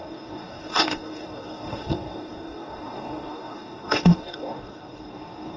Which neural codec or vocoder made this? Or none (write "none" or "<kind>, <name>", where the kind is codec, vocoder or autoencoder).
codec, DAC